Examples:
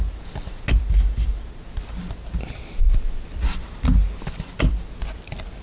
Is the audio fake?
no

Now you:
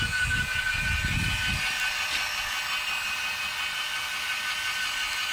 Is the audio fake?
no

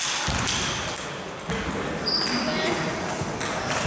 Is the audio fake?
no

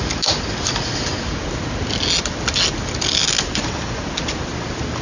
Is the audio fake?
no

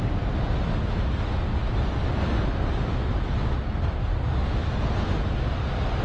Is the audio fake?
no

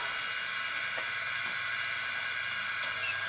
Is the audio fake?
no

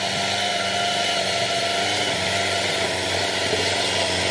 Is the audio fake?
no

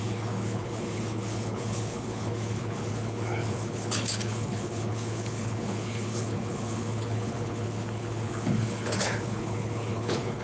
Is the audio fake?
yes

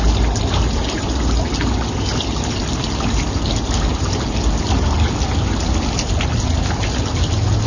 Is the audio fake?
no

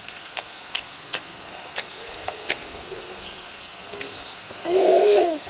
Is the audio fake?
yes